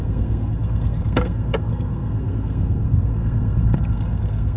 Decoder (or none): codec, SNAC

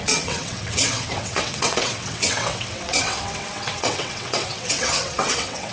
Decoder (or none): vocoder, WaveNeXt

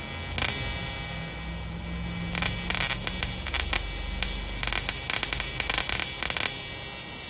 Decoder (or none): none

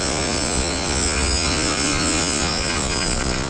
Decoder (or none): vocoder, Vocos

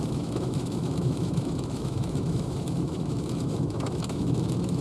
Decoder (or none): autoencoder, DAC-VAE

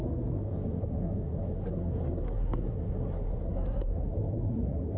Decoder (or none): codec, SNAC